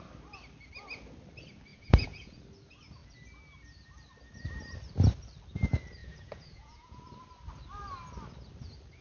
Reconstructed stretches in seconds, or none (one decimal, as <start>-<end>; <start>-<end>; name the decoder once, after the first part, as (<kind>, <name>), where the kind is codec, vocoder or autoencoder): 1.7-2.4 (vocoder, Vocos); 6.0-7.0